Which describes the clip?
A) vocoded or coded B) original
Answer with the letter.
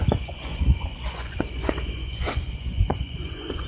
A